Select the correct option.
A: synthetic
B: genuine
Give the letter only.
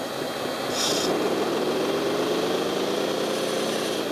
B